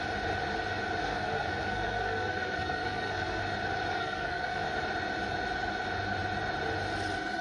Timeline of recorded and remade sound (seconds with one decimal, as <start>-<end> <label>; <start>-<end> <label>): 0.0-1.0 recorded; 1.0-3.4 remade; 3.4-3.9 recorded; 3.9-4.6 remade; 4.6-7.4 recorded